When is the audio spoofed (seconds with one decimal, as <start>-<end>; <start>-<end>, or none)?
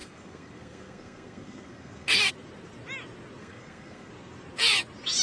0.0-2.3; 3.4-4.1